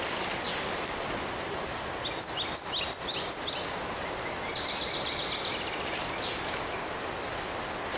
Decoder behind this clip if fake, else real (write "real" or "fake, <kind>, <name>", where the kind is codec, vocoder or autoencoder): real